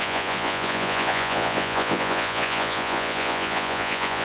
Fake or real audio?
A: fake